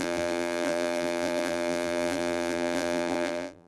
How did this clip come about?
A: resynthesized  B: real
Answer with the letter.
A